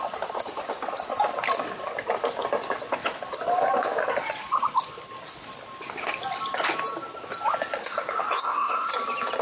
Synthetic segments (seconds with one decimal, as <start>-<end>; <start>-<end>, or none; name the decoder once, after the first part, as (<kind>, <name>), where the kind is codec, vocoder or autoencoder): 7.8-8.9 (codec, SNAC)